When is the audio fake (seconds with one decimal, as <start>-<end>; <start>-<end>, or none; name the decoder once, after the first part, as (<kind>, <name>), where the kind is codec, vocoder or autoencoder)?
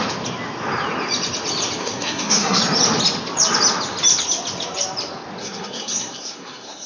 1.8-2.6 (codec, SNAC); 5.4-6.9